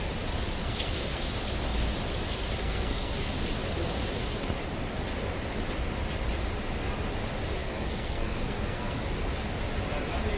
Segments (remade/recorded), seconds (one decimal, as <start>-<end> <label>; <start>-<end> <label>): 0.0-0.6 recorded; 0.6-1.2 remade; 1.2-2.6 recorded; 2.6-3.3 remade; 3.3-7.6 recorded; 7.6-9.0 remade; 9.0-10.4 recorded